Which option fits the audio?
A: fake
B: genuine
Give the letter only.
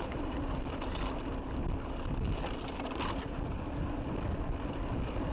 B